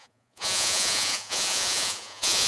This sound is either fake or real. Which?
fake